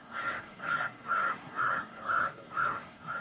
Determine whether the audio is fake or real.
fake